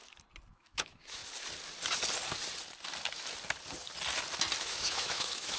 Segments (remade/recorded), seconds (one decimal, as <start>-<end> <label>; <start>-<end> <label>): 0.0-0.5 recorded; 0.5-1.2 remade; 1.2-4.6 recorded; 4.6-5.6 remade